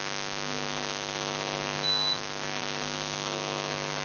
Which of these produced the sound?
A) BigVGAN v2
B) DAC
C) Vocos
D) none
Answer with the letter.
D